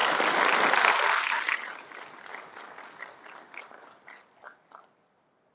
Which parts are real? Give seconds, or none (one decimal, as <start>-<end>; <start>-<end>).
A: 0.0-5.5

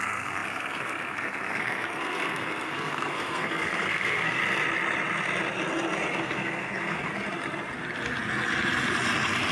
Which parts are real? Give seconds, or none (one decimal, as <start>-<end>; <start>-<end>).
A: 4.4-6.2; 7.1-9.5

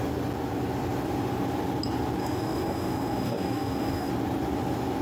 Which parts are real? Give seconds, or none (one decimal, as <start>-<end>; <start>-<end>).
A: 0.0-2.2; 4.1-5.0

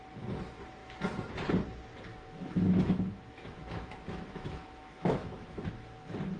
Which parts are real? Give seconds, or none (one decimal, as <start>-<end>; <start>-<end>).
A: 0.0-2.1; 5.9-6.4

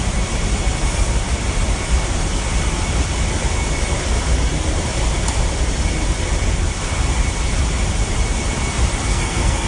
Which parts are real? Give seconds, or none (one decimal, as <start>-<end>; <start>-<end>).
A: 0.0-9.1